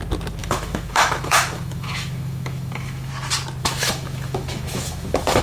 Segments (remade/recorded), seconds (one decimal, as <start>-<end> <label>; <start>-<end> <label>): 0.0-0.4 recorded; 0.4-3.1 remade; 3.1-3.6 recorded; 3.6-5.4 remade